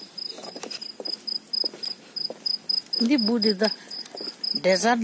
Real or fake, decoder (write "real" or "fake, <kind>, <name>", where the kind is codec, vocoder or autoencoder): real